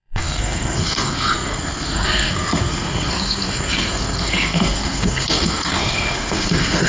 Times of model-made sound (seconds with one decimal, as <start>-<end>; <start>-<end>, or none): 0.0-6.9